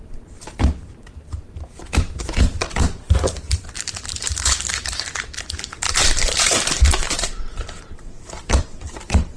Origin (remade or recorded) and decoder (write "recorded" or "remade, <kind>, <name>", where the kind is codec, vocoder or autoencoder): remade, vocoder, BigVGAN v2